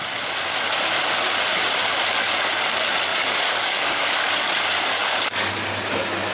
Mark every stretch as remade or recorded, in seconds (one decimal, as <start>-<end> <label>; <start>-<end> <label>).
0.0-3.1 recorded; 3.1-4.6 remade; 4.6-5.0 recorded; 5.0-5.6 remade; 5.6-6.3 recorded